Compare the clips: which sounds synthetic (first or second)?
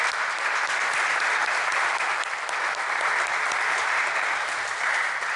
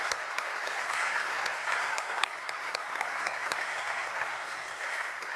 second